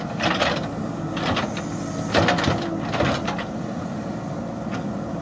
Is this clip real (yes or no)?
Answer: yes